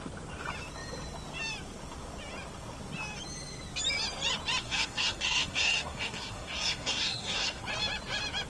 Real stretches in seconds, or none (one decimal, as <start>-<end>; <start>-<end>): 0.0-4.6; 7.6-8.5